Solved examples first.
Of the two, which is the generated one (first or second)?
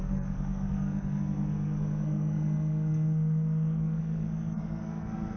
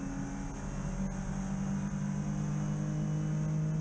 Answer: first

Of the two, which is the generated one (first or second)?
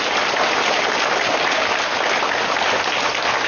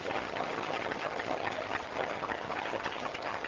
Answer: second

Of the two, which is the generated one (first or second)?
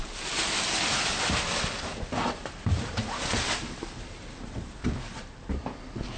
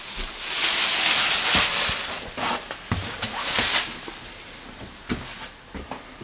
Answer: first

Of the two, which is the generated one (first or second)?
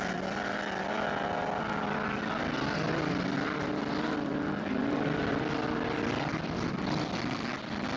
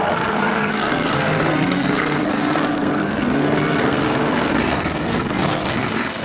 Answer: second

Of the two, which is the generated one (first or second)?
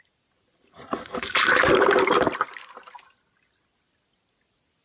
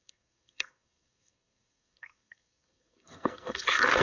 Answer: second